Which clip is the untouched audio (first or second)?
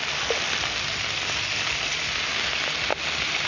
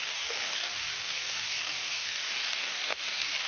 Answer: first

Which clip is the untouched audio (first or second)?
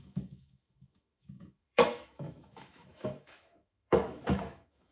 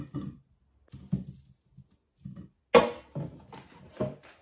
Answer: second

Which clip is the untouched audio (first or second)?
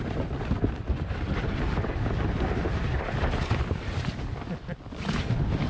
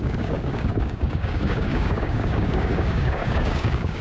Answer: first